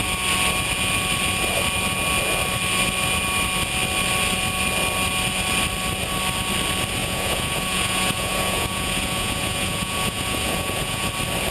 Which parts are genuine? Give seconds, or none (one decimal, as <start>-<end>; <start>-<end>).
0.0-7.0; 11.1-11.5